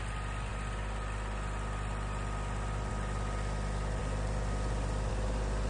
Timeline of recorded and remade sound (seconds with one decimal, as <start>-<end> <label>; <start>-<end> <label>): 0.0-5.7 recorded